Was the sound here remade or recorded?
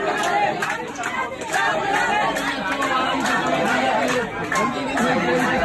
recorded